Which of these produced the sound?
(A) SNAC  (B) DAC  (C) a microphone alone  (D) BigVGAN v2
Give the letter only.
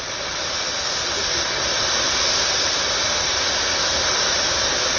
C